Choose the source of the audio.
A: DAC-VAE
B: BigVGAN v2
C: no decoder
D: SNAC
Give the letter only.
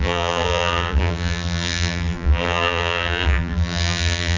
B